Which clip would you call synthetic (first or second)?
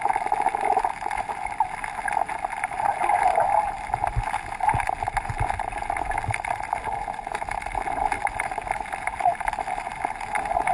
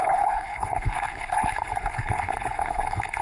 second